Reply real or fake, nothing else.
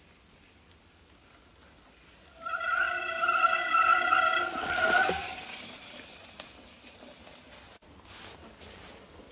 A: real